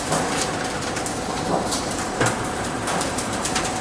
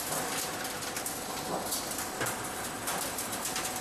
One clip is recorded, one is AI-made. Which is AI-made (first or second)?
first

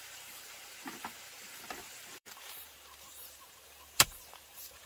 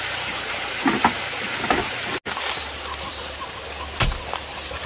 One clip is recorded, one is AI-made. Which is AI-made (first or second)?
first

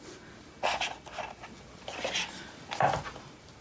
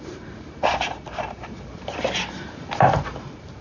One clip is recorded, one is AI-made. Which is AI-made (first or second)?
second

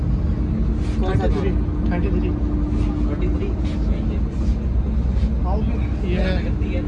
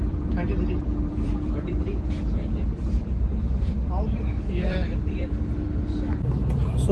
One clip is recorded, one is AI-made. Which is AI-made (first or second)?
second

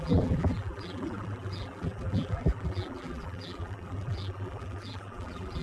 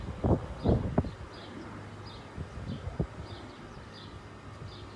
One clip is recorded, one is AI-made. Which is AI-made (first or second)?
first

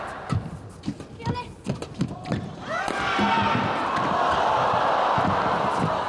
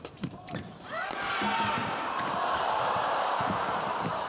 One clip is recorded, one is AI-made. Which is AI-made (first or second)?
second